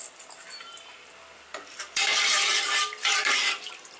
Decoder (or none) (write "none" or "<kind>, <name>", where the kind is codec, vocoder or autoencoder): vocoder, BigVGAN v2